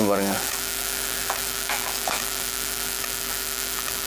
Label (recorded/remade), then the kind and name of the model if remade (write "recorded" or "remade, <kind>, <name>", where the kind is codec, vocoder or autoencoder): remade, autoencoder, DAC-VAE